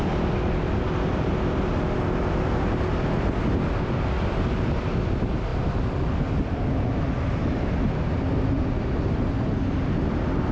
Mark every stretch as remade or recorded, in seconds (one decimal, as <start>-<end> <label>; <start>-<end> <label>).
0.0-10.5 recorded